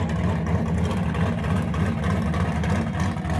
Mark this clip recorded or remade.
recorded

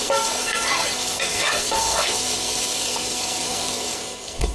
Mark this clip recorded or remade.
remade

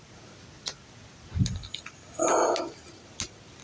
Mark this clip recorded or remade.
recorded